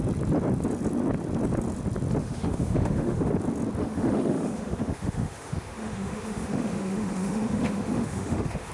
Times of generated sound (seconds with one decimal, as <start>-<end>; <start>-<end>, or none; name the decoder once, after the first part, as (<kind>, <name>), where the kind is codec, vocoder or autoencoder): 2.2-3.3 (autoencoder, DAC-VAE); 3.8-8.7